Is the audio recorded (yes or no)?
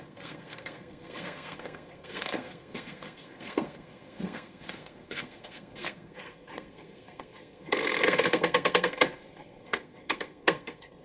no